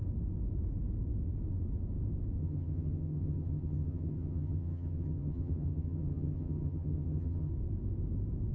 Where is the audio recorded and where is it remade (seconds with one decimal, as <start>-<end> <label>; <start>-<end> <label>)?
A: 0.0-2.4 recorded; 2.4-7.5 remade; 7.5-8.5 recorded